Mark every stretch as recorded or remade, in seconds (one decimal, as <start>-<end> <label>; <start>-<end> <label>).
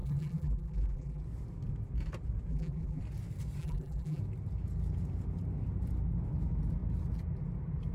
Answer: 0.0-1.2 remade; 1.2-2.5 recorded; 2.5-3.0 remade; 3.0-3.6 recorded; 3.6-4.2 remade; 4.2-7.9 recorded